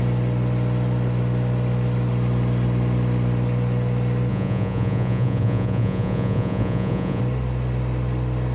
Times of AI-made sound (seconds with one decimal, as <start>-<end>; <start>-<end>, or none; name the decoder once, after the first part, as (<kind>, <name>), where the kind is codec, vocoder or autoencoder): 4.3-7.2 (vocoder, Vocos)